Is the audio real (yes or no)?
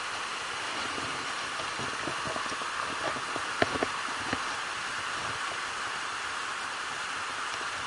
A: yes